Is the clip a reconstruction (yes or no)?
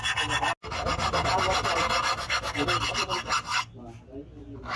no